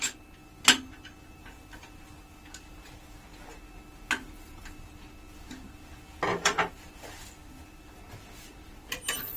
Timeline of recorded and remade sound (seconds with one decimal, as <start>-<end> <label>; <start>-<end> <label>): 0.0-6.3 recorded; 6.3-6.9 remade; 6.9-9.4 recorded